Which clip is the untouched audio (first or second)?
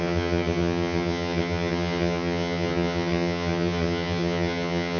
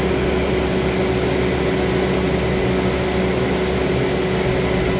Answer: second